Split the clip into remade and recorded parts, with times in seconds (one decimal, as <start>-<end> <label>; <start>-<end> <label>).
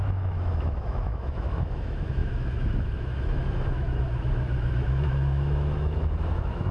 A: 0.0-6.7 remade